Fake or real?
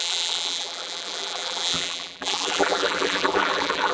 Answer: fake